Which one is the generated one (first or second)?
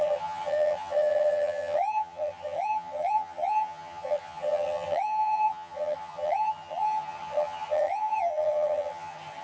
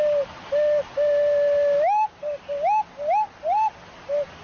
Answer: first